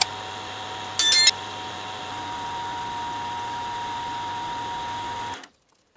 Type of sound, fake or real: real